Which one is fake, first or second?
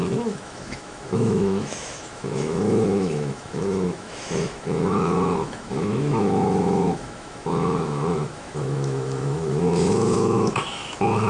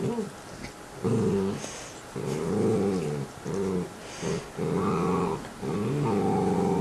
first